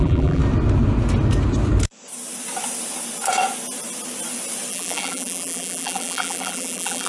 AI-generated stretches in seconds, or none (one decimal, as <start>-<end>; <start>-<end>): 0.0-0.4; 4.7-7.1